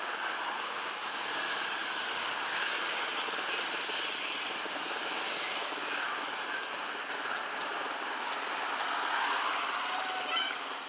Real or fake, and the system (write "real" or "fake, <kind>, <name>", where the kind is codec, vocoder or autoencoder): real